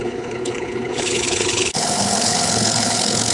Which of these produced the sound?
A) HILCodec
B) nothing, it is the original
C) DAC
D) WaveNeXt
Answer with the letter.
A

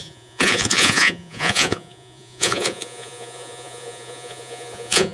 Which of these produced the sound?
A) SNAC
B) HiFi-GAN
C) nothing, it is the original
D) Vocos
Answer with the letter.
D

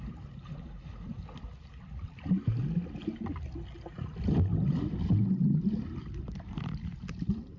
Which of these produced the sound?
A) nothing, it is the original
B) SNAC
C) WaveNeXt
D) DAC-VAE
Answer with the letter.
A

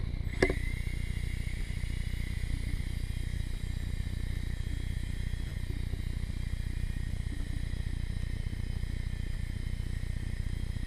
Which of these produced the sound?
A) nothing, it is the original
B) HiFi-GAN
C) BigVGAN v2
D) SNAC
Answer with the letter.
A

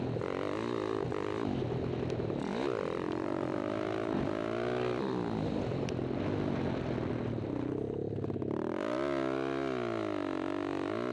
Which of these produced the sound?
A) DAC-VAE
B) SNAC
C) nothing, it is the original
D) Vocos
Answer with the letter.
C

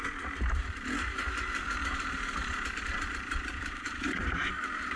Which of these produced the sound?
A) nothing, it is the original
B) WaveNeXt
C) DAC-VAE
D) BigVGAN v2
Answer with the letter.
D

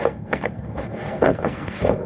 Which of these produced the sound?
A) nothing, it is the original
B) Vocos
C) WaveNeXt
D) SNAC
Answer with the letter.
D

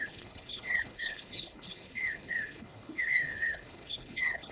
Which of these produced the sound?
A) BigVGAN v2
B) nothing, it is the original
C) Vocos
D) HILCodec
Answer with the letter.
D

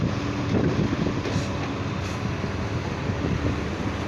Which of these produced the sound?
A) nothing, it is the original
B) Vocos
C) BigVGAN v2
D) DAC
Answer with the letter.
C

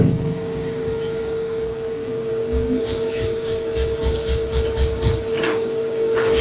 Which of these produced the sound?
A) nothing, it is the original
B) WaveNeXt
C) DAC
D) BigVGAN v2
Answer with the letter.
C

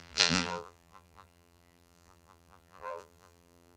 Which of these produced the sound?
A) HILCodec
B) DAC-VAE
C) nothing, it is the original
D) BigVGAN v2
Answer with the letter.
D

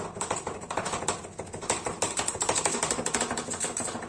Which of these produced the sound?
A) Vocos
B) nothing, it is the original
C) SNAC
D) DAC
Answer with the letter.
B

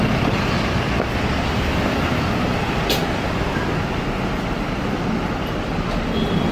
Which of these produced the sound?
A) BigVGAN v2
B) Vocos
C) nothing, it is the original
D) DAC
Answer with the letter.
C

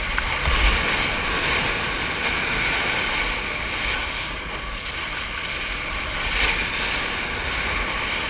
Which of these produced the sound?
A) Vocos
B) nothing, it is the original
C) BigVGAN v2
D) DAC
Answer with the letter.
B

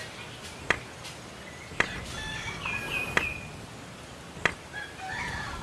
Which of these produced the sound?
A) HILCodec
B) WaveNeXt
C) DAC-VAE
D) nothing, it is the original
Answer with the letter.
D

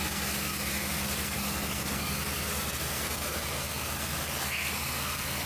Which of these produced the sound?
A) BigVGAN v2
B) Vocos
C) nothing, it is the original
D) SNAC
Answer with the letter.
D